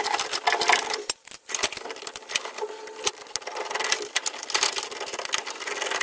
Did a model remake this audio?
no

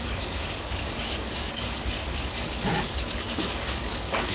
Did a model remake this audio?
yes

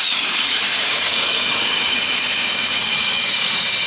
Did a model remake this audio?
yes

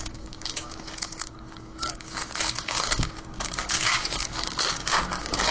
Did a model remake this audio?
yes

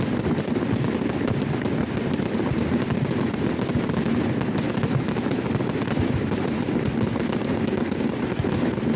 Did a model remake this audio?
no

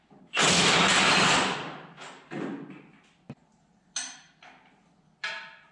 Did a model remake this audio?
no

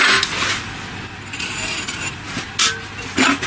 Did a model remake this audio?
no